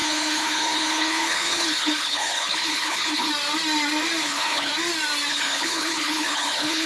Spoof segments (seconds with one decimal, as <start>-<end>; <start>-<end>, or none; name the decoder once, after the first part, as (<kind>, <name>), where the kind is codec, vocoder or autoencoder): 0.0-3.3 (codec, HILCodec); 4.2-4.7; 5.3-6.9